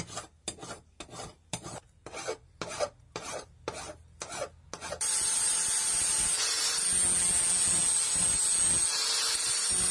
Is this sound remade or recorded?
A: recorded